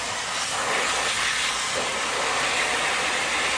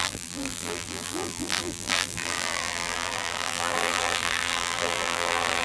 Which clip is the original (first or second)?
first